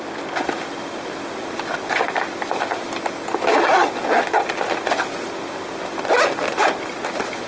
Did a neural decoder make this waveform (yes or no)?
no